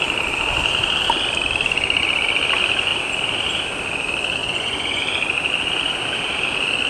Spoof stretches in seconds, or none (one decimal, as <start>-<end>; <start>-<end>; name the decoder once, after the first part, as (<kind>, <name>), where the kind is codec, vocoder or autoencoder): 4.4-5.0 (vocoder, Vocos)